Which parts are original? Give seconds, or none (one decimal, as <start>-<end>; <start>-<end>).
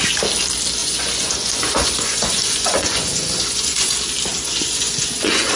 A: 0.0-0.8; 3.9-4.3